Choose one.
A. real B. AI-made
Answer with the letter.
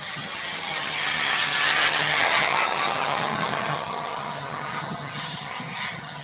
B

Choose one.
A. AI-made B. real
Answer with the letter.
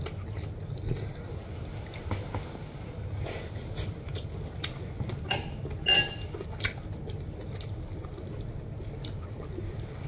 B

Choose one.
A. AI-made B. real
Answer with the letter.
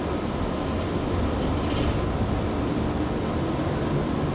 B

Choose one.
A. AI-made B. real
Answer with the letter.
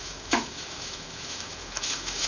A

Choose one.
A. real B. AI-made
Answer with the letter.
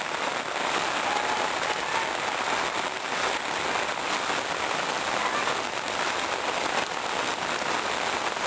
A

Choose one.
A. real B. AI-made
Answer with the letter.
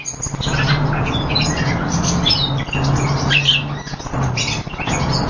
A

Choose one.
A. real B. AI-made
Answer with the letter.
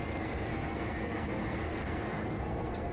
B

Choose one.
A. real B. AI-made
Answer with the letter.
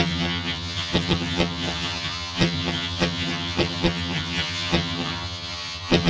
B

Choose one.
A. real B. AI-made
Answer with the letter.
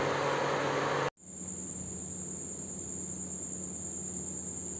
A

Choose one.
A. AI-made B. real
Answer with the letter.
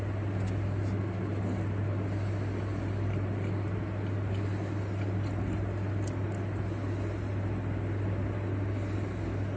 B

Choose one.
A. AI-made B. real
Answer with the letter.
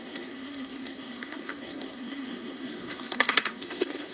A